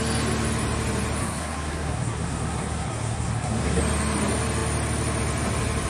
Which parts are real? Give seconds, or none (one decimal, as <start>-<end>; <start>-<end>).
0.0-1.2; 3.8-5.9